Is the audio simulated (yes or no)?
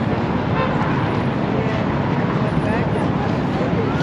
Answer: no